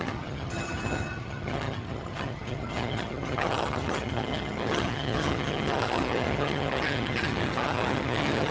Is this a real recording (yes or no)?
no